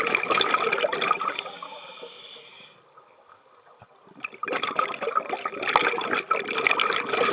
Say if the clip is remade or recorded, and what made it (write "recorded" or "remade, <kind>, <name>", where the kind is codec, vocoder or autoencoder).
recorded